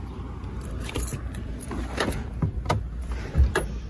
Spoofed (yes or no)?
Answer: no